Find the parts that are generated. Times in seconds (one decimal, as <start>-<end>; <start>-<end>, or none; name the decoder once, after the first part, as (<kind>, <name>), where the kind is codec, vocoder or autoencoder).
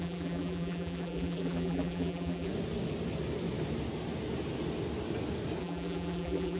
0.0-2.5 (vocoder, BigVGAN v2); 5.6-6.6